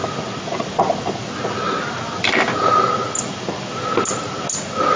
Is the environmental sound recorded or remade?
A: recorded